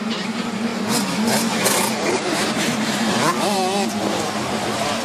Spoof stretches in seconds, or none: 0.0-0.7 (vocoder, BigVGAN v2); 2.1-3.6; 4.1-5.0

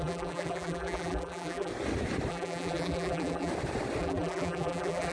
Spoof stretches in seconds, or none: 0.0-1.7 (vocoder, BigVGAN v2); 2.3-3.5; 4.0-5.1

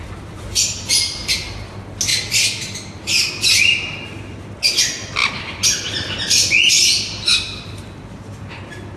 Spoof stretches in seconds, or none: 5.2-6.7 (vocoder, BigVGAN v2); 7.3-8.6

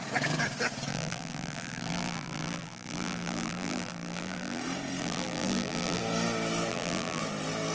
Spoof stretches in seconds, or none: 0.9-4.6 (vocoder, BigVGAN v2); 5.0-6.0; 6.7-7.2

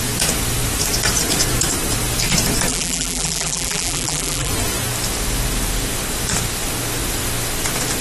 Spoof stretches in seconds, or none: 2.7-4.5 (vocoder, BigVGAN v2)

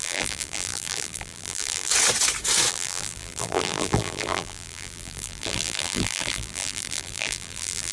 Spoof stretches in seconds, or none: 0.0-1.9 (vocoder, BigVGAN v2); 2.7-7.9

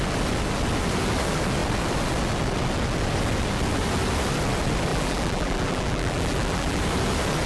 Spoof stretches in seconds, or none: 4.9-6.8 (vocoder, BigVGAN v2)

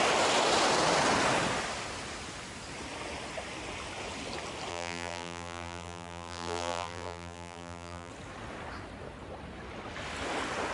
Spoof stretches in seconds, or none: 4.7-8.1 (vocoder, BigVGAN v2)